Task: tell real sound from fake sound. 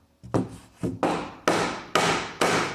real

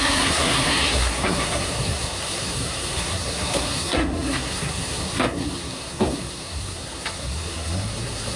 fake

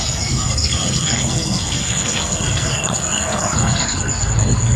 fake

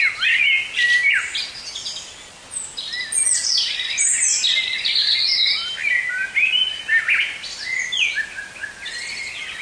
real